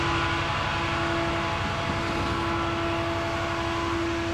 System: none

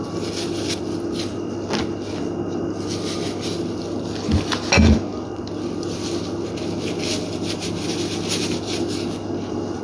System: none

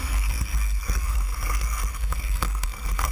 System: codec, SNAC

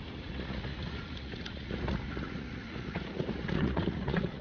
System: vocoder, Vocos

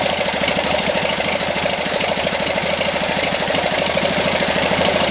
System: vocoder, BigVGAN v2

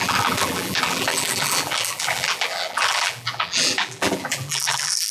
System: vocoder, BigVGAN v2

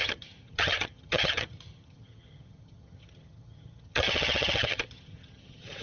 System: vocoder, HiFi-GAN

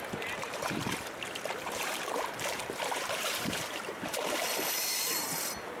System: vocoder, BigVGAN v2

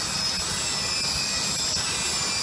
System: none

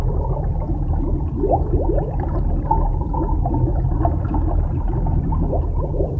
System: none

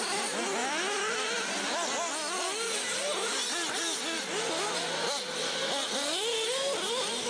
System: none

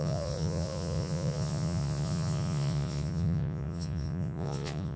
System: vocoder, Vocos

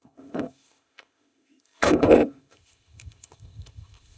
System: codec, ZipCodec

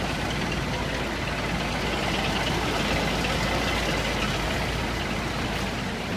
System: none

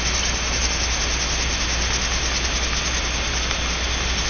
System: none